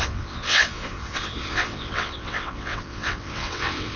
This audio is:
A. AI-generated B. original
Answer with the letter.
A